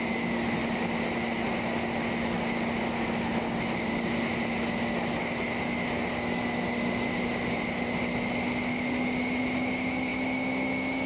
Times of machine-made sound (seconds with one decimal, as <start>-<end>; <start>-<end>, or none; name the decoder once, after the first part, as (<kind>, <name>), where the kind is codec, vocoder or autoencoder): none